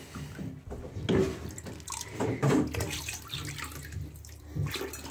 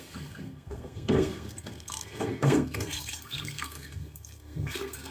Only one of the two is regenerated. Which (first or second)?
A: second